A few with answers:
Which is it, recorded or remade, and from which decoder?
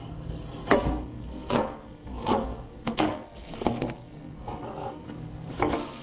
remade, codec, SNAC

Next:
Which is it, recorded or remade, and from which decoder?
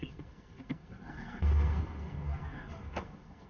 remade, codec, SNAC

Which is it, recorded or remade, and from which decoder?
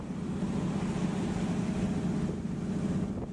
recorded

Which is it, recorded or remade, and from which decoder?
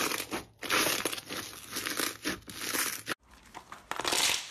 recorded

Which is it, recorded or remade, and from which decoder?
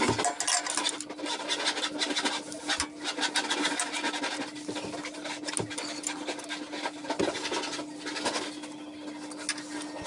recorded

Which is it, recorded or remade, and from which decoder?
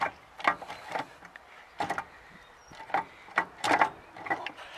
recorded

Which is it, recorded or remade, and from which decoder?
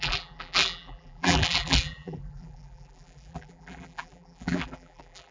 remade, vocoder, BigVGAN v2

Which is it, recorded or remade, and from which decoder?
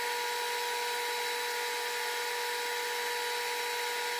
recorded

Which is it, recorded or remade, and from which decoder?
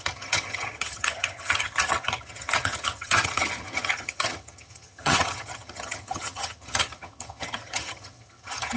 remade, vocoder, HiFi-GAN